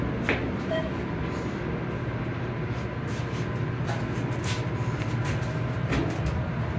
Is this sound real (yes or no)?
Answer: yes